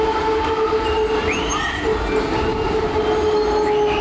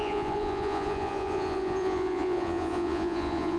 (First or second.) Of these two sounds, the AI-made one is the second